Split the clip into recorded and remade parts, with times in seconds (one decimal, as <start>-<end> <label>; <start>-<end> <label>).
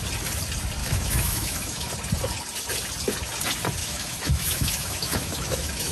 0.0-0.8 recorded; 0.8-1.9 remade; 1.9-3.8 recorded; 3.8-5.9 remade